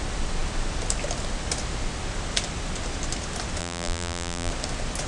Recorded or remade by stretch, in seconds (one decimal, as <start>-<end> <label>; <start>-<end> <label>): 0.0-3.6 recorded; 3.6-4.5 remade; 4.5-5.1 recorded